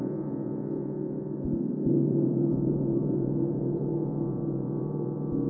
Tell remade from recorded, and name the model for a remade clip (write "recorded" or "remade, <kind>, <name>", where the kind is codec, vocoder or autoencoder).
remade, vocoder, Vocos